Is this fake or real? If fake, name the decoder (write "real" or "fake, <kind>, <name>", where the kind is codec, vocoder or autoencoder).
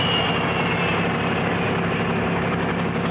real